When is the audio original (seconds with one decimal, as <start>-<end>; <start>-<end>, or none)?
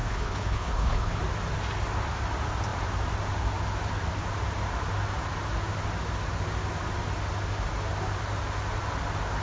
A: 1.2-9.4